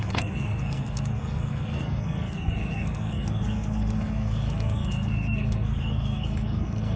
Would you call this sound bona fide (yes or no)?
no